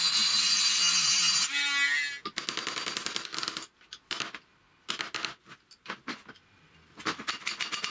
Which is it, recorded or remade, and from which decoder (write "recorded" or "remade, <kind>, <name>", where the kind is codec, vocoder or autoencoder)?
recorded